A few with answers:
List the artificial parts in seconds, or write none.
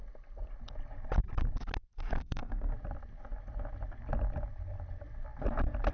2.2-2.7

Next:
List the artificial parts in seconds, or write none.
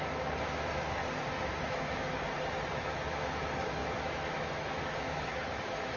0.0-1.0; 1.6-2.1; 2.8-6.0